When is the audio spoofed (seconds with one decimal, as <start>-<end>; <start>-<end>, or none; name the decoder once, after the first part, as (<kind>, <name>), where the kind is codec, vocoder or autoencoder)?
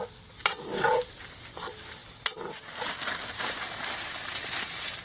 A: 0.7-1.3 (vocoder, BigVGAN v2); 2.0-5.0